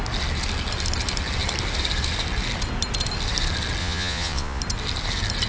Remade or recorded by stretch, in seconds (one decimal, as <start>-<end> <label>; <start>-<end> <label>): 0.0-3.8 recorded; 3.8-4.6 remade; 4.6-5.5 recorded